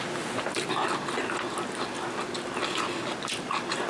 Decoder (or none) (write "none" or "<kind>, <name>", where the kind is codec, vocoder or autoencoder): none